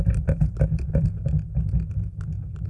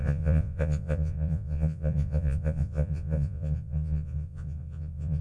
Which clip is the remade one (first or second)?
second